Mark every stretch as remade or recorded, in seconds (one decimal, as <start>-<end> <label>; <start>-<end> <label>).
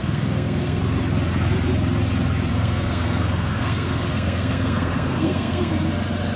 0.0-0.8 remade; 0.8-2.5 recorded; 2.5-5.7 remade; 5.7-6.4 recorded